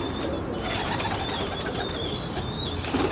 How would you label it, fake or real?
real